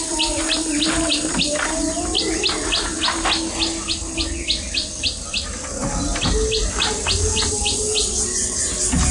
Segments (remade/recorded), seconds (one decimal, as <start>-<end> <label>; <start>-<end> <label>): 0.0-9.1 recorded

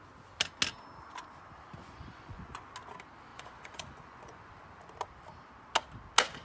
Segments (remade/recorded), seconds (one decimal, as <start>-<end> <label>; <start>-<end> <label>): 0.0-1.8 recorded; 1.8-2.7 remade; 2.7-3.3 recorded; 3.3-4.5 remade; 4.5-6.4 recorded

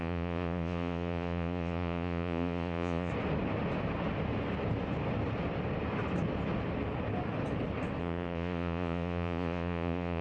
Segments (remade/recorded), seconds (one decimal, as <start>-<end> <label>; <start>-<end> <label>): 0.0-3.1 remade; 3.1-8.0 recorded; 8.0-10.2 remade

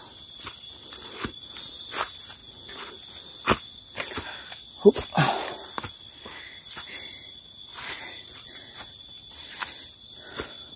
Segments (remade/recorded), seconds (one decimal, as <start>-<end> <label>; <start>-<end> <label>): 0.0-2.4 recorded; 2.4-2.9 remade; 2.9-7.7 recorded; 7.7-9.0 remade; 9.0-10.8 recorded

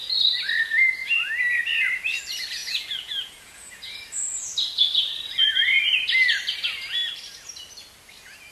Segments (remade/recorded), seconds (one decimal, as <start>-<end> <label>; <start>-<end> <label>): 0.0-2.6 recorded; 2.6-3.9 remade; 3.9-8.5 recorded

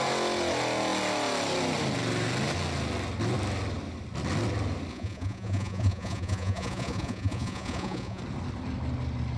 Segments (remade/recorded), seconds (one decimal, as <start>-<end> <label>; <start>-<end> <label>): 0.0-4.9 recorded; 4.9-8.2 remade; 8.2-9.4 recorded